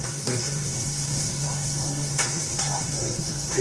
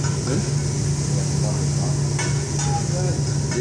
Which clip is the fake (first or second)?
first